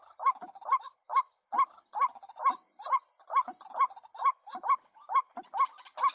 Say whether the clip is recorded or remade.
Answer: recorded